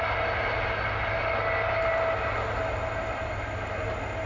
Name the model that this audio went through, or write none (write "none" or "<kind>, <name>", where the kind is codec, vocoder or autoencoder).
none